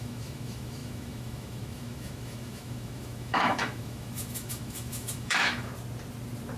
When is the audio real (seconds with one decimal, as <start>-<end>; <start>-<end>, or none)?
5.7-6.6